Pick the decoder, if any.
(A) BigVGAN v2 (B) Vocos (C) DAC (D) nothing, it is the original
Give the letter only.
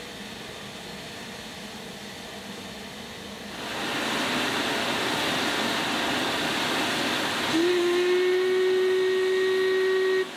D